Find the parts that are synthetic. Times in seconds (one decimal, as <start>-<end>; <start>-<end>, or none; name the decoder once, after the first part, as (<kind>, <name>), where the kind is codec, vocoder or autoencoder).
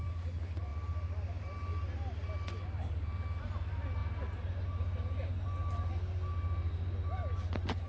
none